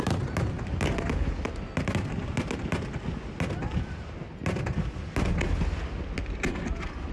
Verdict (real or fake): real